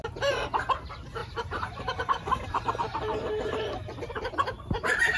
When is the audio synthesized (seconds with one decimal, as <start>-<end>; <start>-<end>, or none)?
1.2-4.3